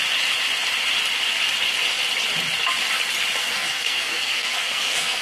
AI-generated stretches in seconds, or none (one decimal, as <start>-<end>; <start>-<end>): 3.4-5.2